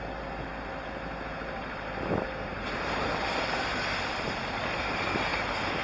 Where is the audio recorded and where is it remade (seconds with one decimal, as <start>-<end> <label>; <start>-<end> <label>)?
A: 0.0-2.5 recorded; 2.5-4.8 remade; 4.8-5.3 recorded; 5.3-5.8 remade